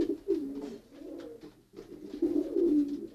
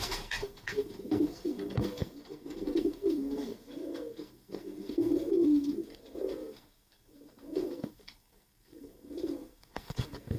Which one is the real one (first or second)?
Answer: first